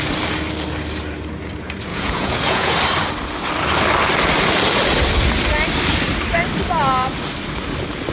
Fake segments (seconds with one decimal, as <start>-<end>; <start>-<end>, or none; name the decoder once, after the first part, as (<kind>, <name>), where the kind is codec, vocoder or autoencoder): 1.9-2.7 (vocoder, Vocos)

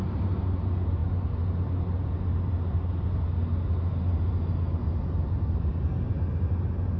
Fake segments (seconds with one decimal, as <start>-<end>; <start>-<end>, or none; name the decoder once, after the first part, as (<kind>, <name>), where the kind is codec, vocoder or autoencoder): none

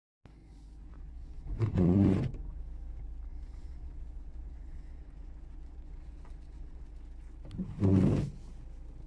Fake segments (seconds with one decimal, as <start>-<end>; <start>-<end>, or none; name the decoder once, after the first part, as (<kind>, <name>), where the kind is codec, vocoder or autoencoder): 0.4-2.6 (vocoder, Vocos); 3.3-6.9

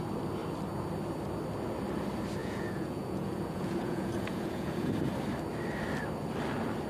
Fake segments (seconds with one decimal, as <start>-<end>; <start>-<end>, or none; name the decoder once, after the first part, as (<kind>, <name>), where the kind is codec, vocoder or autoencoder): 2.4-4.9 (vocoder, Vocos)